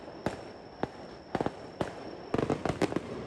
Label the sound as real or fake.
real